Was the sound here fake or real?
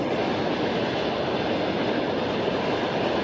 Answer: real